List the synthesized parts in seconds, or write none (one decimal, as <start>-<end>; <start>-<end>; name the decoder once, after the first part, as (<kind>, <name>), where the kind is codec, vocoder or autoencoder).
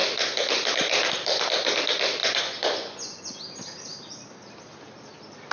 2.2-3.3 (vocoder, Vocos)